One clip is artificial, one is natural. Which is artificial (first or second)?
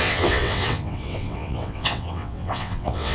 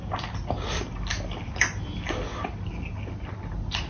first